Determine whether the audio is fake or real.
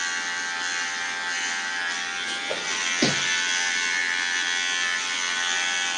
real